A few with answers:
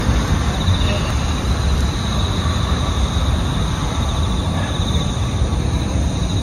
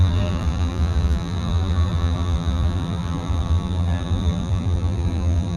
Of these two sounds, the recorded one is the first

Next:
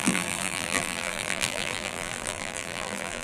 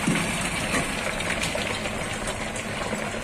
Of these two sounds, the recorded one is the second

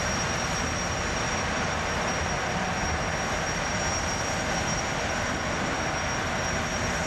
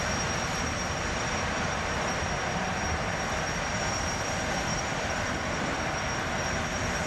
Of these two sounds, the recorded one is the first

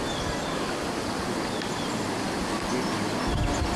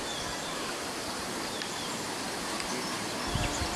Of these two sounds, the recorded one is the first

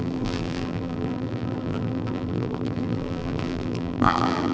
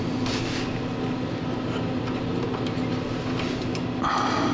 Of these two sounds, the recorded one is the second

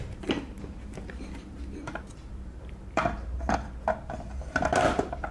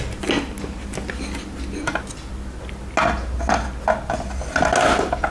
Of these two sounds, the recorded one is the second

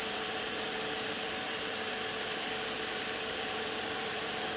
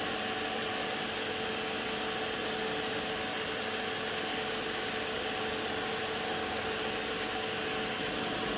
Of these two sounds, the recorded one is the second